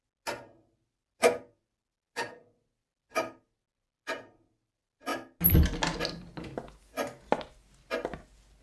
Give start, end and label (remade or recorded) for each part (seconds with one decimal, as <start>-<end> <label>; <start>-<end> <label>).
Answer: 0.0-8.6 recorded